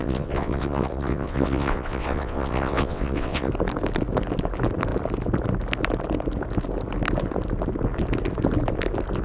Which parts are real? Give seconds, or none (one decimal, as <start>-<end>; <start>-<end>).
3.5-9.2